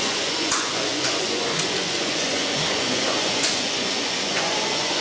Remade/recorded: remade